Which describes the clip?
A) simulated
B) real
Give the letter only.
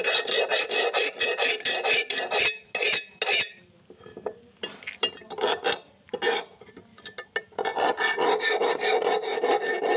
B